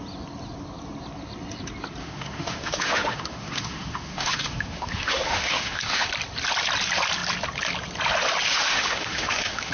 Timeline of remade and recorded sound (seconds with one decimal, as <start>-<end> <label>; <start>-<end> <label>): 0.0-2.0 recorded; 2.0-6.1 remade; 6.1-8.5 recorded; 8.5-9.7 remade